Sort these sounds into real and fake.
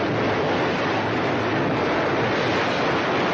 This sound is real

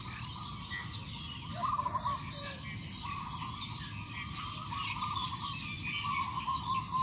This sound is real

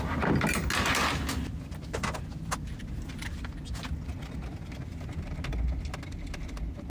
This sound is real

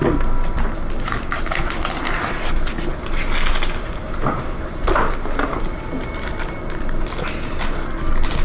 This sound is real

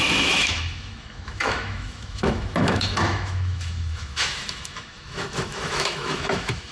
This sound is fake